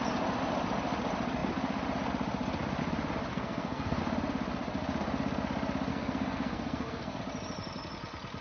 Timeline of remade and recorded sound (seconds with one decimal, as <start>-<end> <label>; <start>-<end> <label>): 0.0-3.3 recorded; 3.3-4.0 remade; 4.0-5.9 recorded; 5.9-7.2 remade; 7.2-8.4 recorded